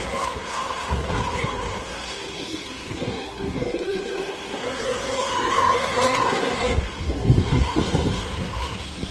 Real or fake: fake